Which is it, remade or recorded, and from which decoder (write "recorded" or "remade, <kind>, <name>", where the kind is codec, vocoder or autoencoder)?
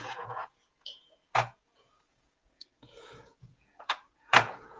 remade, vocoder, Vocos